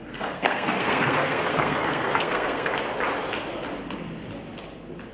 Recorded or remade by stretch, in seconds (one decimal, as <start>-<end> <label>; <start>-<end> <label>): 0.0-2.7 remade; 2.7-5.1 recorded